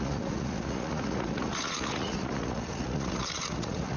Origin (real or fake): fake